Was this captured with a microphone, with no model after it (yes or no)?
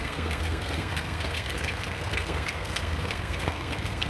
no